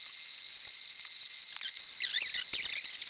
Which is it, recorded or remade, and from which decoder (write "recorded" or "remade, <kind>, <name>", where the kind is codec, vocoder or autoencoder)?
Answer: recorded